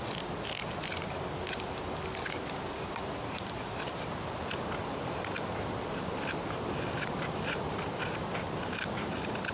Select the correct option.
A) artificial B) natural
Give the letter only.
B